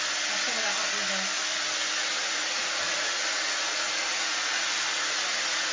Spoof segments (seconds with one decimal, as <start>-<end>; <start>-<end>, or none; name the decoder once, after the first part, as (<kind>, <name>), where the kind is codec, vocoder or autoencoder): 2.2-5.7 (vocoder, Vocos)